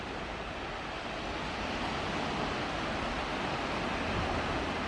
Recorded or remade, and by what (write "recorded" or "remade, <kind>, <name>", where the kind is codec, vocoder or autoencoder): recorded